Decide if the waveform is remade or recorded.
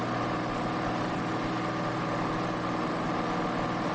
recorded